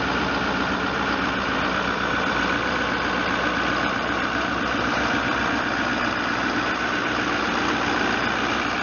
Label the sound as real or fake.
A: real